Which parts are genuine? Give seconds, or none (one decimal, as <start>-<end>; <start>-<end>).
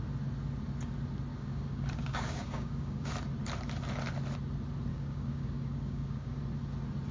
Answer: 0.0-1.3; 3.1-4.9; 6.4-7.1